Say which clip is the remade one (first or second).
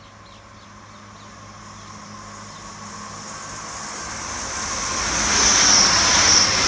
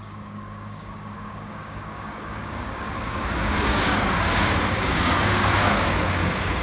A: second